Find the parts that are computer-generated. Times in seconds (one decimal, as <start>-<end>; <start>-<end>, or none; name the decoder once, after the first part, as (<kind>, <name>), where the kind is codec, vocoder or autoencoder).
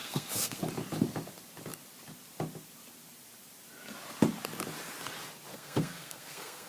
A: 0.0-0.6 (codec, SNAC); 5.5-6.7